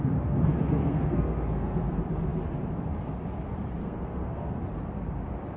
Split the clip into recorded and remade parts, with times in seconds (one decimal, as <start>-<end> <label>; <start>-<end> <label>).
0.0-0.8 recorded; 0.8-1.9 remade; 1.9-3.8 recorded; 3.8-4.6 remade; 4.6-5.6 recorded